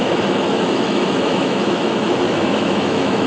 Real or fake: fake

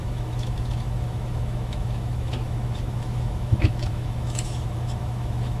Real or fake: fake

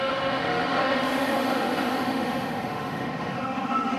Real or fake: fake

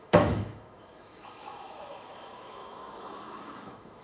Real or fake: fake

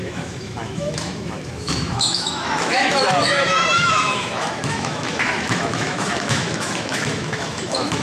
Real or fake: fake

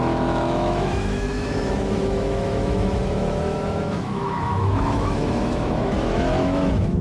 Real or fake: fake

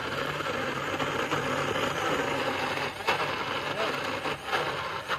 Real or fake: real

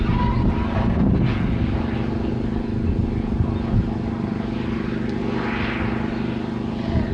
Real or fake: real